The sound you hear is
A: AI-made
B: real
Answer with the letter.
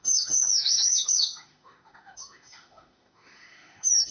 A